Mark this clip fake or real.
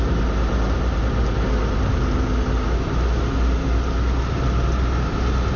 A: real